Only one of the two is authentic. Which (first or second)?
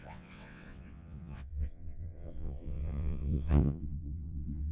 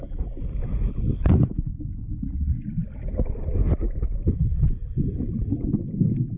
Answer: second